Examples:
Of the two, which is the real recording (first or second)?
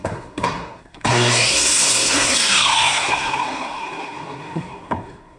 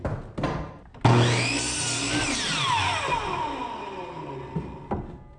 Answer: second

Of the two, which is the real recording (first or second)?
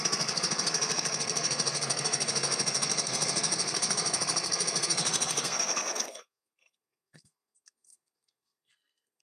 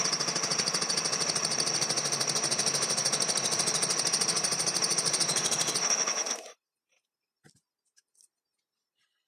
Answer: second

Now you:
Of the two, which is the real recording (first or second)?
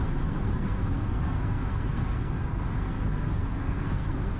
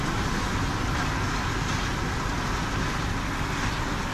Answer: second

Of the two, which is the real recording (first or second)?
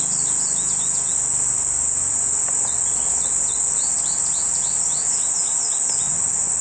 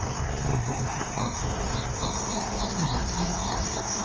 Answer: first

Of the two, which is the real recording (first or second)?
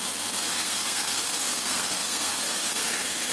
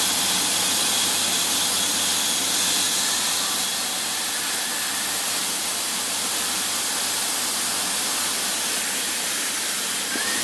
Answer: second